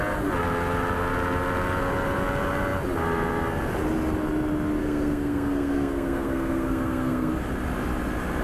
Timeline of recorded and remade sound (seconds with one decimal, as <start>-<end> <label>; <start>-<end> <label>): 0.0-4.8 recorded; 4.8-7.3 remade; 7.3-8.4 recorded